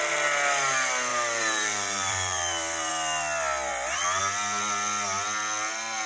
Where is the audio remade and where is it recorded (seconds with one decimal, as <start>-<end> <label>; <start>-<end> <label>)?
0.0-1.1 recorded; 1.1-2.9 remade; 2.9-6.1 recorded

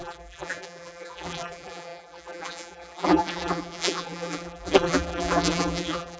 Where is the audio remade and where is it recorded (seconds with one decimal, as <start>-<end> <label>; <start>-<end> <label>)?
0.0-6.2 remade

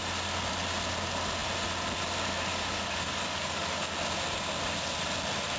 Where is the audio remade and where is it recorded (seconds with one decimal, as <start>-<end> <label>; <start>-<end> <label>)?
0.0-2.5 recorded; 2.5-3.9 remade; 3.9-5.6 recorded

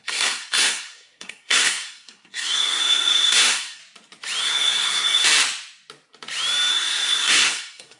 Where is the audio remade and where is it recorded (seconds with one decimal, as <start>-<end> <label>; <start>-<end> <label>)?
0.0-3.8 remade; 3.8-4.4 recorded; 4.4-5.2 remade; 5.2-6.7 recorded; 6.7-8.0 remade

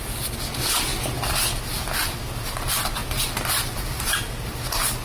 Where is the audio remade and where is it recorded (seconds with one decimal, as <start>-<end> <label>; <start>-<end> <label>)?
0.0-5.0 recorded

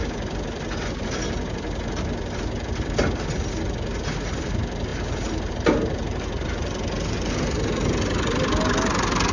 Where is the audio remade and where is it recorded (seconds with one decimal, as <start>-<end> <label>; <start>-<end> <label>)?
0.0-9.3 recorded